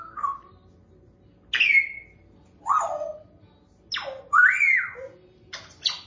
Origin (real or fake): real